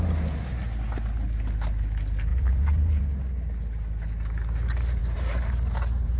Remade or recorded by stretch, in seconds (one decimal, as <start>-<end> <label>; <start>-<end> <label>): 0.0-2.3 recorded; 2.3-3.0 remade; 3.0-5.0 recorded; 5.0-6.2 remade